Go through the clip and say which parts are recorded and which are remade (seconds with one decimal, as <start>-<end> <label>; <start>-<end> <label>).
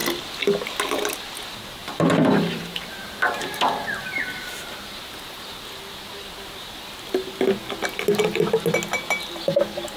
0.0-1.8 recorded; 1.8-5.5 remade; 5.5-10.0 recorded